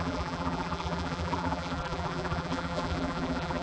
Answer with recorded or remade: remade